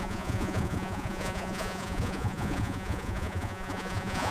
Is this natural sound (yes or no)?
no